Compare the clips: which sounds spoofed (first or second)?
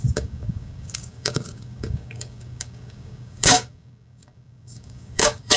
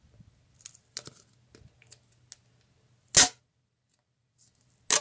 first